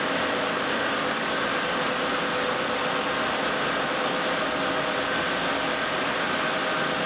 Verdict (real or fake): real